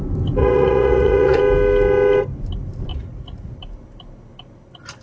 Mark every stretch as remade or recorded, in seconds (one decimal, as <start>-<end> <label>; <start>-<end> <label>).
0.0-0.4 recorded; 0.4-1.4 remade; 1.4-2.9 recorded; 2.9-3.5 remade; 3.5-5.0 recorded